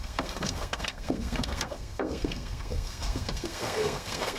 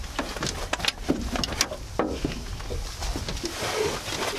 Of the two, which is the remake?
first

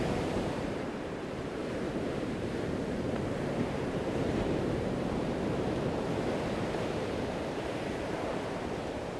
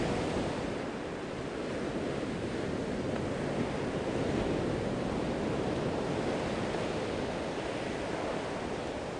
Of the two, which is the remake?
first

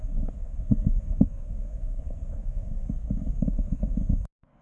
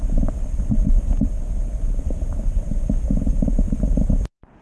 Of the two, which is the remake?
first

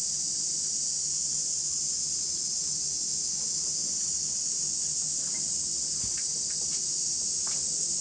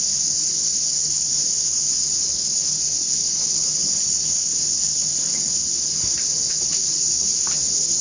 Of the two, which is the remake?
second